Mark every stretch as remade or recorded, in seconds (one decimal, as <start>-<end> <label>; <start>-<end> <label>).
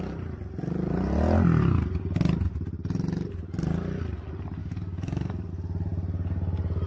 0.0-4.6 recorded; 4.6-5.5 remade; 5.5-6.9 recorded